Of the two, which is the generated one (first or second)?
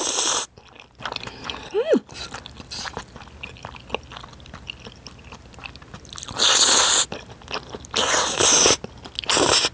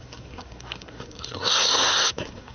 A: second